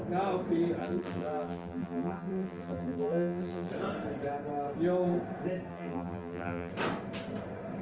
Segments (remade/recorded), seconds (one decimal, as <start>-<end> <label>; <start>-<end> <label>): 0.0-0.8 recorded; 0.8-3.7 remade; 3.7-5.7 recorded; 5.7-6.7 remade; 6.7-7.8 recorded